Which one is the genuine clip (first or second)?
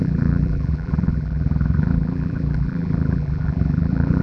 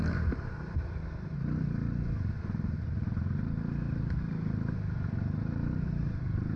second